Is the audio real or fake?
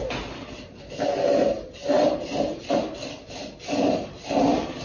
real